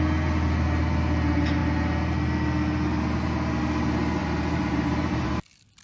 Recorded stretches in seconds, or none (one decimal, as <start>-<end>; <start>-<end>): 0.0-4.2; 5.3-5.8